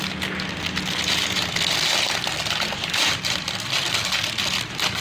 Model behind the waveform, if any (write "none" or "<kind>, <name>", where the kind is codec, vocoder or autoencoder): none